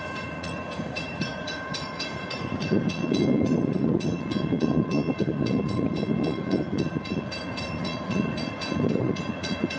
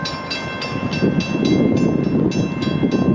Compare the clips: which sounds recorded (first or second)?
second